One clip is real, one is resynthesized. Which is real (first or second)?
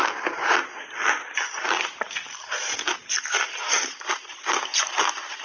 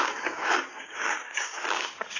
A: first